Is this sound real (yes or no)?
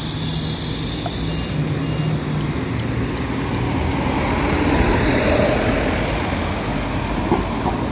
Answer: yes